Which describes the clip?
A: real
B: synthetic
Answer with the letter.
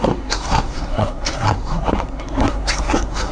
B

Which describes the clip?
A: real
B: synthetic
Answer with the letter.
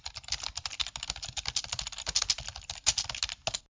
A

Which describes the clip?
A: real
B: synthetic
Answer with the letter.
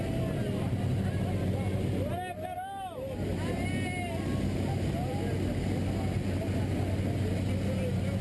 A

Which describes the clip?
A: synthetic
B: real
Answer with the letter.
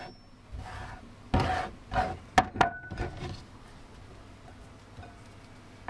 B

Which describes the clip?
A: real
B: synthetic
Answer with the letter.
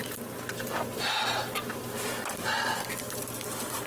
A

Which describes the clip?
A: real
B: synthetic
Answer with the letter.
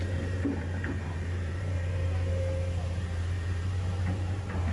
B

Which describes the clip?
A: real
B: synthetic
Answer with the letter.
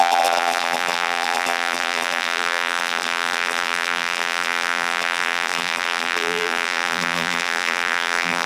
B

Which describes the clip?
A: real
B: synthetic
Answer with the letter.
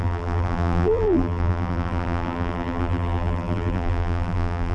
B